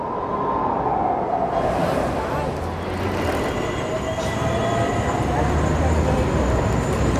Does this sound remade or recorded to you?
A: recorded